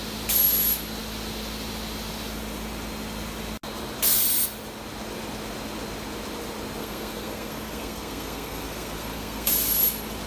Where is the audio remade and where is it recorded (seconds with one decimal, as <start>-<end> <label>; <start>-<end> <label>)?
0.0-6.8 recorded; 6.8-9.5 remade; 9.5-10.3 recorded